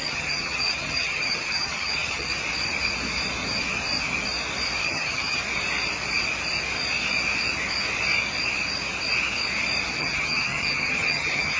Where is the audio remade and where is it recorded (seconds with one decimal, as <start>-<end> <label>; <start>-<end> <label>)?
0.0-2.3 remade; 2.3-4.8 recorded; 4.8-5.4 remade; 5.4-10.0 recorded; 10.0-11.6 remade